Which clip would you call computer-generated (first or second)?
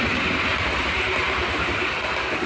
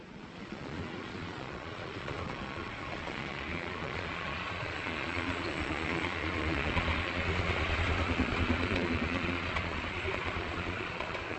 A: second